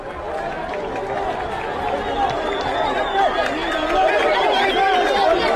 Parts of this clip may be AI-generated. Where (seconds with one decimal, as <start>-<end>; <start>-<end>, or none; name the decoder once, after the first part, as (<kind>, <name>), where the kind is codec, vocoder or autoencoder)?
none